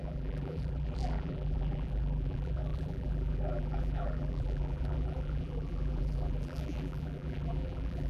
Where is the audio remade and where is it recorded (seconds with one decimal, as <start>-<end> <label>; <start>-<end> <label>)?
0.0-8.1 remade